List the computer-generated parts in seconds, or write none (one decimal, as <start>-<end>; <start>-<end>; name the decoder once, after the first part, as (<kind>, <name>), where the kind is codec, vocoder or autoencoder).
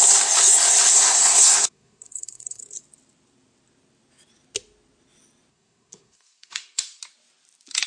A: 0.9-2.6 (codec, SNAC); 5.5-7.0